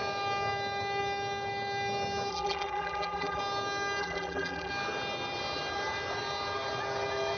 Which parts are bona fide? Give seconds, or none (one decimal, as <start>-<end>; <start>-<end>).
0.0-2.3; 3.4-4.0; 4.7-7.4